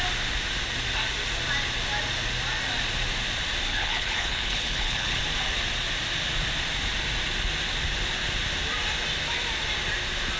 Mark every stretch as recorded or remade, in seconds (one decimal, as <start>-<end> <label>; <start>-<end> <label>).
0.0-3.7 recorded; 3.7-5.2 remade; 5.2-10.4 recorded